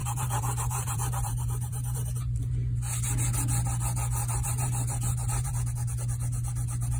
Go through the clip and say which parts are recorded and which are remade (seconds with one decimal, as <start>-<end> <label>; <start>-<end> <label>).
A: 0.0-2.5 remade; 2.5-4.2 recorded; 4.2-5.5 remade; 5.5-7.0 recorded

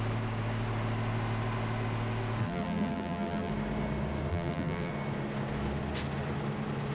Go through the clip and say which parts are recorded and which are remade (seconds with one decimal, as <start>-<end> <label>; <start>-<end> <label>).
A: 0.0-2.4 recorded; 2.4-3.5 remade; 3.5-4.3 recorded; 4.3-4.9 remade; 4.9-6.9 recorded

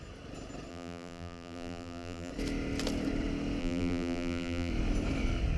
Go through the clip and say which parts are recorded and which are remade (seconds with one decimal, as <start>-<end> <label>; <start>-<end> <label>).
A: 0.0-0.7 recorded; 0.7-2.3 remade; 2.3-3.6 recorded; 3.6-4.7 remade; 4.7-5.6 recorded

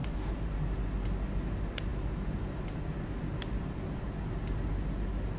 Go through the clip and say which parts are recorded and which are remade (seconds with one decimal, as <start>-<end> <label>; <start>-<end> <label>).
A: 0.0-0.5 remade; 0.5-5.4 recorded

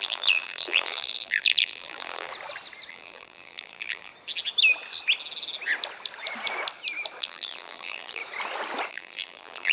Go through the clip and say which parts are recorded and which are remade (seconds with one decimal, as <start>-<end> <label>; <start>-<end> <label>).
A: 0.0-2.3 remade; 2.3-2.9 recorded; 2.9-4.1 remade; 4.1-7.2 recorded; 7.2-8.2 remade; 8.2-8.9 recorded; 8.9-9.7 remade

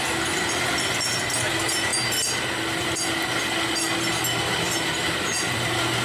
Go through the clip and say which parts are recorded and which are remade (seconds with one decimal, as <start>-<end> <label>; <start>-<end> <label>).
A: 0.0-6.0 recorded

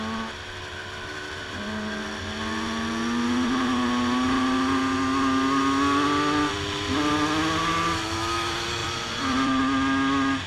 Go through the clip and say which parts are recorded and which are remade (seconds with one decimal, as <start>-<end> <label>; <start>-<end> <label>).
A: 0.0-8.8 recorded; 8.8-9.6 remade; 9.6-10.5 recorded